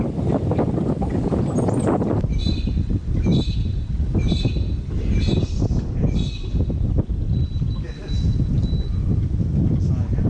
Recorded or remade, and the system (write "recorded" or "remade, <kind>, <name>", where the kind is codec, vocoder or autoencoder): recorded